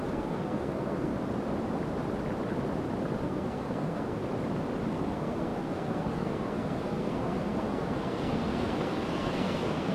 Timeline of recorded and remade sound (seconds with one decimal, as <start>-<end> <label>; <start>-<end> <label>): 0.0-1.1 remade; 1.1-3.2 recorded; 3.2-4.2 remade; 4.2-4.9 recorded; 4.9-9.9 remade